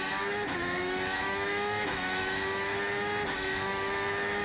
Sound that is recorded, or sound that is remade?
remade